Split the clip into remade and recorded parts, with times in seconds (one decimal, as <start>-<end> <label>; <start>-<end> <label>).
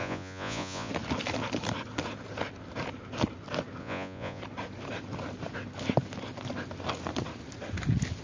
0.0-0.9 remade; 0.9-3.8 recorded; 3.8-4.4 remade; 4.4-8.2 recorded